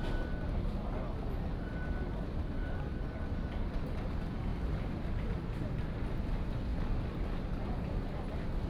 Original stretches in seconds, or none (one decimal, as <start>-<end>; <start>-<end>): 0.0-2.1; 3.2-8.7